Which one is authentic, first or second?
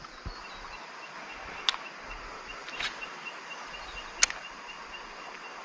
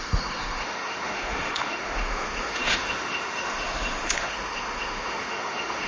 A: first